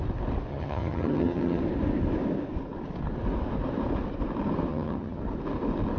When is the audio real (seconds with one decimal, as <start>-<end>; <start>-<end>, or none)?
0.0-0.5; 1.6-4.7; 5.2-6.0